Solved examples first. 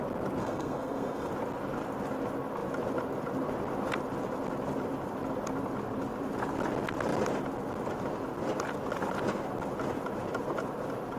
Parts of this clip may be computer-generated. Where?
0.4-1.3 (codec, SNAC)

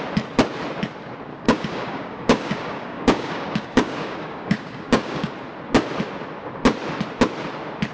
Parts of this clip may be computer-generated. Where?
1.3-5.3 (codec, DAC)

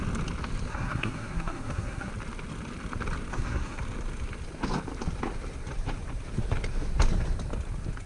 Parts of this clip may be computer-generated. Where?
0.7-2.1 (codec, SNAC); 3.3-3.8